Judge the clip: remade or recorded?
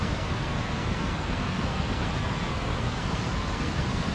remade